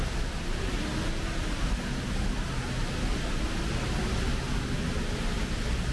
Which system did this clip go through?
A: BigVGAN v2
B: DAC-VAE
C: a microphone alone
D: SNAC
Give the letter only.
C